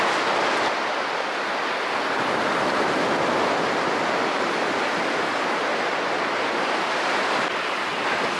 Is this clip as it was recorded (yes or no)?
yes